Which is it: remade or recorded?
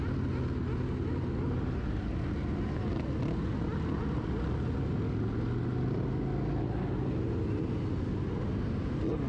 recorded